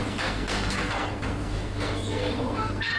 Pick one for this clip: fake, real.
fake